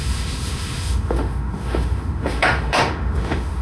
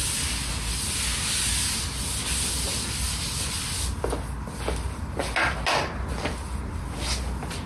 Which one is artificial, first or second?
first